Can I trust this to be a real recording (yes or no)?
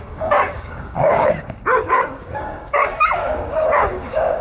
no